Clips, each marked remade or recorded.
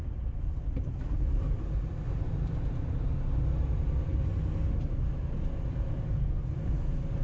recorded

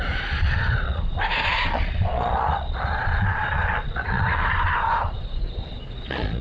remade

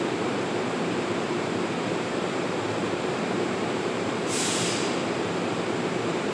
remade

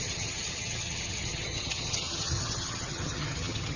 remade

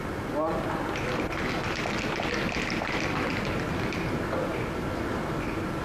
recorded